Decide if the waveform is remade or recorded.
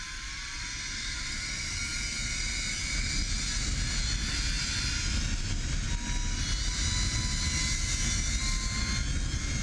recorded